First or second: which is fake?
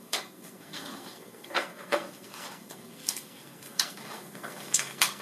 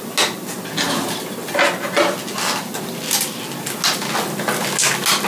first